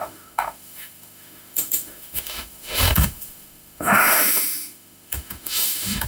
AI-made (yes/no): yes